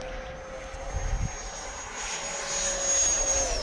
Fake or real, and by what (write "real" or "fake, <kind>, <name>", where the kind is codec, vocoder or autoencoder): real